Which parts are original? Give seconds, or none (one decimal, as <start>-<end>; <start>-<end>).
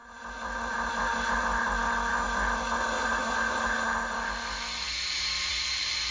0.0-6.1